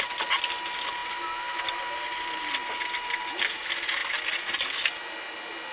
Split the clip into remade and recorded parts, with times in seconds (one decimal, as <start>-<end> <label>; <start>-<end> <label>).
0.0-5.7 recorded